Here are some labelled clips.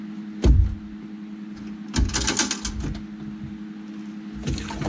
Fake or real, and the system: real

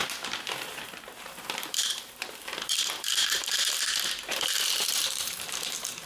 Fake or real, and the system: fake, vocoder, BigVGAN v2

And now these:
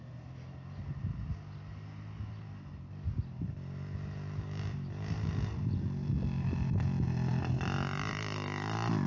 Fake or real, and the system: real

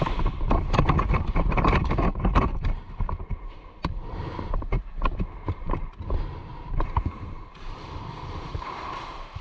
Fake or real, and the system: fake, vocoder, BigVGAN v2